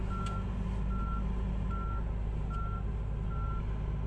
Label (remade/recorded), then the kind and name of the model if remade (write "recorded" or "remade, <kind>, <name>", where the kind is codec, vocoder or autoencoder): recorded